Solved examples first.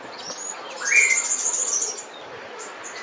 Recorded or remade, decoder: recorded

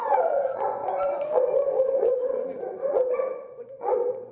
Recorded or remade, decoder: remade, vocoder, Vocos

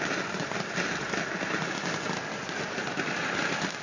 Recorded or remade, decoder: recorded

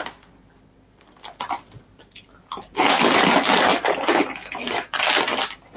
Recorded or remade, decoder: recorded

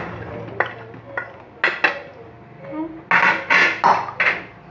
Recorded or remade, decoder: recorded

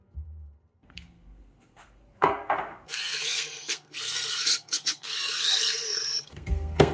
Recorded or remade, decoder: remade, codec, SNAC